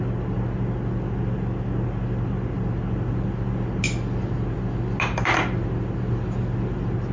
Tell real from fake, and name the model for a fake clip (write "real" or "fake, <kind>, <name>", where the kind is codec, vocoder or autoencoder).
real